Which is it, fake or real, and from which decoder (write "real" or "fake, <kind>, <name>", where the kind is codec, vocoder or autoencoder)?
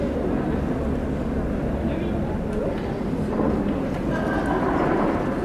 real